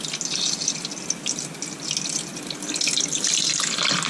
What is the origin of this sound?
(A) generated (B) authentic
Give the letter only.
B